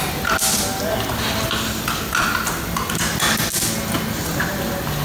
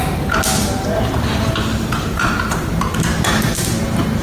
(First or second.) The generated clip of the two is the second